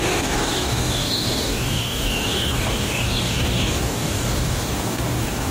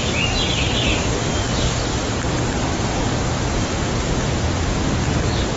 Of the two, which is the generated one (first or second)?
first